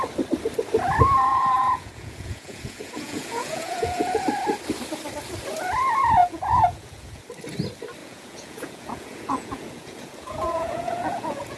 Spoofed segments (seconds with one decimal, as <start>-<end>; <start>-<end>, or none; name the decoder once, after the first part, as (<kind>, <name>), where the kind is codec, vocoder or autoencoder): 1.3-4.2 (vocoder, Vocos); 6.2-7.2; 8.0-11.6